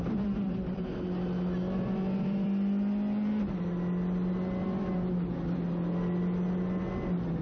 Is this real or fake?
real